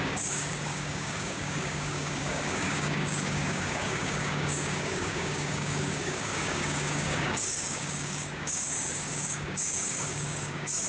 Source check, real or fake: fake